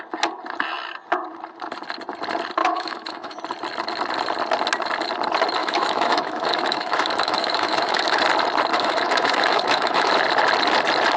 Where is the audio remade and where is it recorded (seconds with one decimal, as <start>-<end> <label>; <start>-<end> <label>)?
0.0-2.6 recorded; 2.6-3.4 remade; 3.4-5.6 recorded; 5.6-8.2 remade; 8.2-8.7 recorded; 8.7-10.1 remade; 10.1-11.2 recorded